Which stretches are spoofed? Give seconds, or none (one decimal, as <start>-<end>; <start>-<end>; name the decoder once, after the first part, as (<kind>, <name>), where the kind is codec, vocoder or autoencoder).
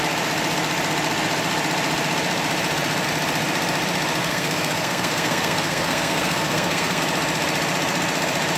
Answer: 4.2-7.0 (codec, SNAC)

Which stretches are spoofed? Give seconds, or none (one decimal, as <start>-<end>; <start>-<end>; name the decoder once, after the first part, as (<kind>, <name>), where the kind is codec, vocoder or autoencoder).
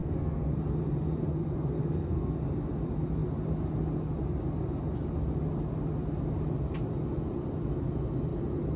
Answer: 0.0-0.6 (codec, SNAC); 1.3-2.3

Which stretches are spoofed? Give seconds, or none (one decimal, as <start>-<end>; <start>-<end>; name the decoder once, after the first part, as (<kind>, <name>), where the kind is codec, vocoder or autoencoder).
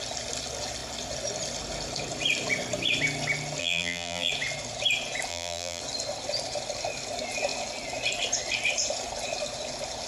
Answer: 3.6-4.3 (vocoder, BigVGAN v2); 5.3-5.8